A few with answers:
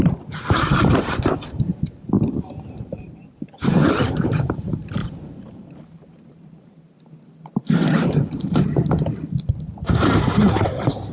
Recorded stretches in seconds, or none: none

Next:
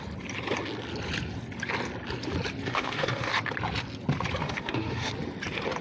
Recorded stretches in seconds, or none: 0.0-2.7; 3.3-4.4; 5.1-5.8

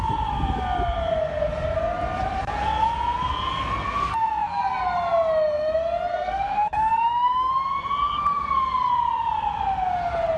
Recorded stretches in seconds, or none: 0.0-4.0; 4.6-6.1; 7.5-10.4

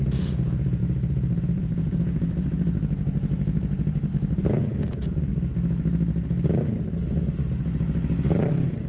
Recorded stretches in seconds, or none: 5.3-8.9

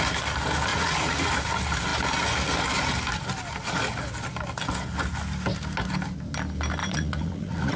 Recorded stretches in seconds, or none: 0.0-0.7; 1.3-6.8

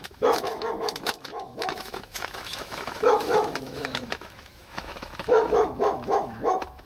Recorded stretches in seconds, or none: none

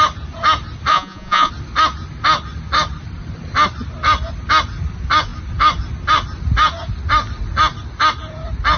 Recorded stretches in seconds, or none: 0.0-0.9; 1.5-8.8

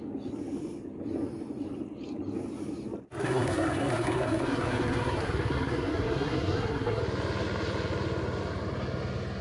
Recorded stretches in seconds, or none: 0.0-3.2; 7.0-9.4